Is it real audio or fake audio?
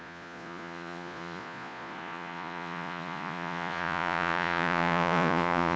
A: fake